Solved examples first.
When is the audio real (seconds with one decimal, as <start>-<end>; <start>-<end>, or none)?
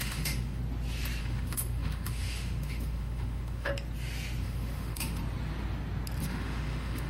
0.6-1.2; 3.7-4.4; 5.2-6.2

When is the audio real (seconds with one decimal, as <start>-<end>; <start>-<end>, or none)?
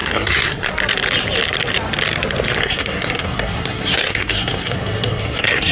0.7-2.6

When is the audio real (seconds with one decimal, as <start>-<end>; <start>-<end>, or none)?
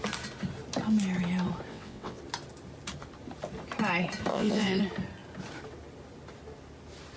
0.0-1.7; 2.2-4.3; 4.8-7.2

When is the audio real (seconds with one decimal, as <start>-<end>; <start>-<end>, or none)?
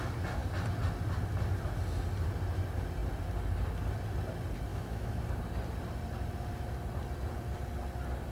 0.0-4.7; 5.2-8.3